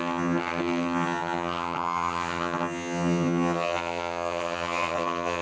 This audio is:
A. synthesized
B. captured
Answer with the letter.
A